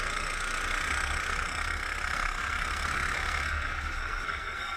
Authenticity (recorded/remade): remade